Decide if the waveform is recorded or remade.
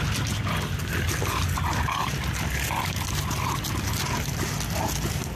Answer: recorded